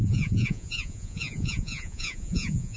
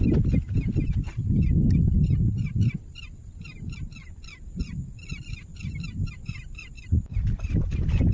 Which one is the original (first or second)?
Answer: second